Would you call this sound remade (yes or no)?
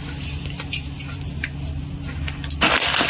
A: no